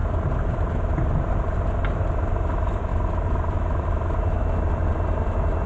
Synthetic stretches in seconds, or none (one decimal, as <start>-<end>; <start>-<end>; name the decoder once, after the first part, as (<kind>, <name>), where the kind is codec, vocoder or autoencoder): 0.0-1.3 (vocoder, BigVGAN v2)